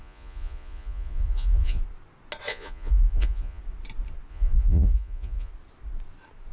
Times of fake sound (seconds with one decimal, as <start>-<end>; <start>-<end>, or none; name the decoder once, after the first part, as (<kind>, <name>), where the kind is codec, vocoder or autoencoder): 0.0-1.8 (vocoder, Vocos); 2.5-3.6; 4.3-5.5